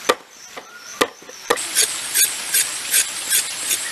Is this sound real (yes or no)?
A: yes